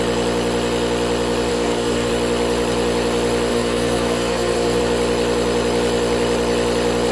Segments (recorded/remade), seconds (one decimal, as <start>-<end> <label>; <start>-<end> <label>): 0.0-1.5 recorded; 1.5-2.1 remade; 2.1-3.5 recorded; 3.5-4.8 remade; 4.8-7.1 recorded